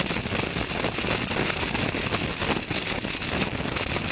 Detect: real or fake real